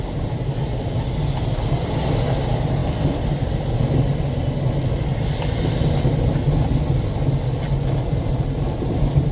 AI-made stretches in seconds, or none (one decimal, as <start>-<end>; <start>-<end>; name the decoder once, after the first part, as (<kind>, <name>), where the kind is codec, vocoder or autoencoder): none